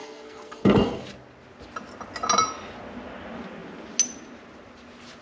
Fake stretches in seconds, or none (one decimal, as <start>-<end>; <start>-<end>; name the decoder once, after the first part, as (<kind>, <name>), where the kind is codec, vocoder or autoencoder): 0.0-1.0 (codec, SNAC)